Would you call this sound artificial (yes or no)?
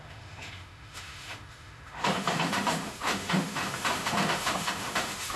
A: yes